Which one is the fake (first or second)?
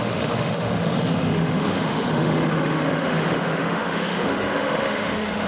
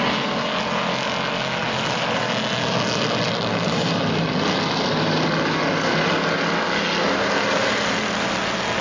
first